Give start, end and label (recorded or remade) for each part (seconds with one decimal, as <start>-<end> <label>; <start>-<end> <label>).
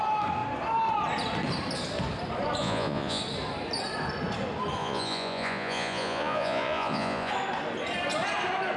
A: 0.0-2.6 recorded; 2.6-3.2 remade; 3.2-4.8 recorded; 4.8-7.3 remade; 7.3-8.8 recorded